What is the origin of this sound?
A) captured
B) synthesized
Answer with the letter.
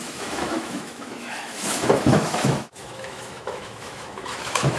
B